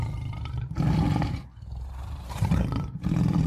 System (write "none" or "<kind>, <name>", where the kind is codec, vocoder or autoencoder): vocoder, BigVGAN v2